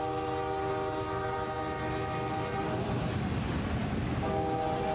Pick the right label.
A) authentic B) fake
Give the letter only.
A